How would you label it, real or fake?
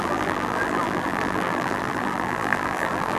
fake